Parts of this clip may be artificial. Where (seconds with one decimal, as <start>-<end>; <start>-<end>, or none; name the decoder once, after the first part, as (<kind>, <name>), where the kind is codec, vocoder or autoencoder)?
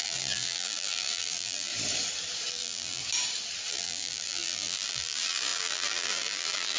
0.0-1.7 (vocoder, BigVGAN v2); 2.5-3.0; 3.7-6.8